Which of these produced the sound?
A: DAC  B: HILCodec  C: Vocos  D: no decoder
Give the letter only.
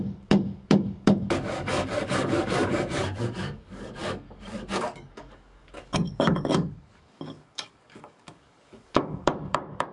A